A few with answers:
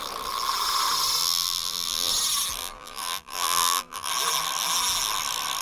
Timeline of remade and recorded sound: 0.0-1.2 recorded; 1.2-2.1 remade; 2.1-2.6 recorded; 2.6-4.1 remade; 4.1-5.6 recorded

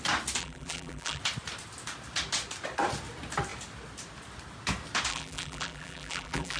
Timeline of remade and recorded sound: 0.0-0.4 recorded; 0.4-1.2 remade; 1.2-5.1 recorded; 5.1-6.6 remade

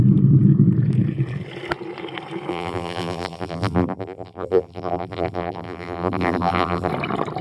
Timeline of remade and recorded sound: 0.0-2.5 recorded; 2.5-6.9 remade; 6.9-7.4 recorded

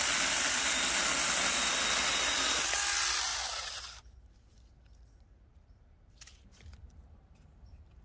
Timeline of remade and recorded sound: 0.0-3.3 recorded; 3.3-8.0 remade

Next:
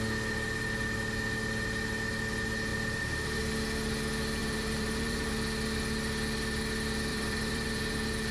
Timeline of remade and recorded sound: 0.0-2.7 recorded; 2.7-3.4 remade; 3.4-4.4 recorded; 4.4-5.3 remade; 5.3-7.1 recorded; 7.1-7.8 remade; 7.8-8.3 recorded

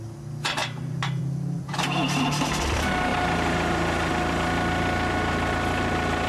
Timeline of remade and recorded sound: 0.0-0.6 recorded; 0.6-1.2 remade; 1.2-3.1 recorded; 3.1-4.1 remade; 4.1-6.3 recorded